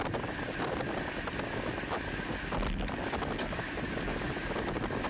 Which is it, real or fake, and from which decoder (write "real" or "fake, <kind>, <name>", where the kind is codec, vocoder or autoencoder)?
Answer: real